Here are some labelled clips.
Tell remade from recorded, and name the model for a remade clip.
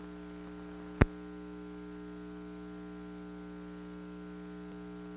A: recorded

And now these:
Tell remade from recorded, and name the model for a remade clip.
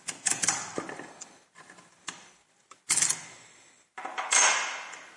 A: recorded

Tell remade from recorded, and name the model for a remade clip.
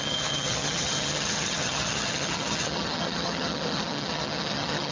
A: remade, vocoder, HiFi-GAN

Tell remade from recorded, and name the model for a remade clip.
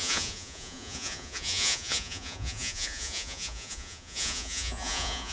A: remade, vocoder, Vocos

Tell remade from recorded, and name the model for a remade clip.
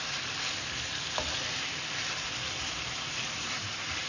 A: recorded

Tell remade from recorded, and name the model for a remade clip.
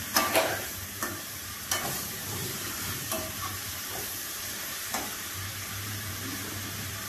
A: remade, vocoder, BigVGAN v2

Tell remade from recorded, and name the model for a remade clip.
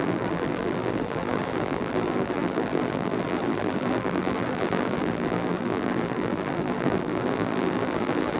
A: remade, vocoder, BigVGAN v2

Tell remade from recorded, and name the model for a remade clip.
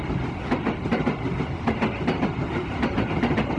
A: recorded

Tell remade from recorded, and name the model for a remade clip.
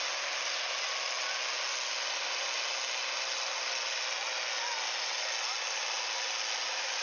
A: recorded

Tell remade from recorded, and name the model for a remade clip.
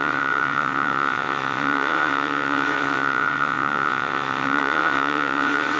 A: remade, vocoder, WaveNeXt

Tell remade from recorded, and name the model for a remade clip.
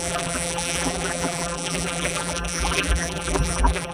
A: remade, vocoder, BigVGAN v2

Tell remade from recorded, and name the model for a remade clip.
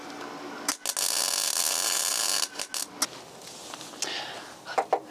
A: recorded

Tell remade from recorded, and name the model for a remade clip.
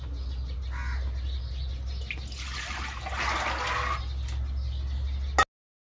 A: recorded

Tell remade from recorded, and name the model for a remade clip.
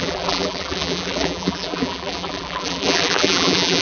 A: remade, vocoder, BigVGAN v2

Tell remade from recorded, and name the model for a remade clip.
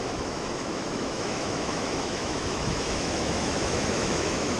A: remade, autoencoder, DAC-VAE